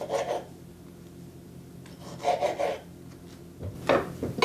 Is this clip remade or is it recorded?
recorded